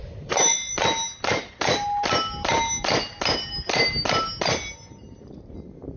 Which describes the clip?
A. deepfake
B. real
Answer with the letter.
B